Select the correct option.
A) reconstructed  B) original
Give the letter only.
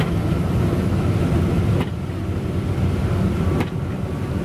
B